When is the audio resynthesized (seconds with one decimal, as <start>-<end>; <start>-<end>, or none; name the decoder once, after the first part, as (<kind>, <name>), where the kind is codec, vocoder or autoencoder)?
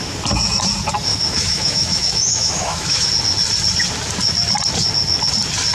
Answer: 1.1-3.1 (autoencoder, DAC-VAE)